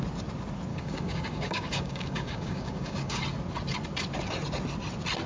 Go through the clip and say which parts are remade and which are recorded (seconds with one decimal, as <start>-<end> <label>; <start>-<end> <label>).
0.0-0.7 recorded; 0.7-3.2 remade; 3.2-5.3 recorded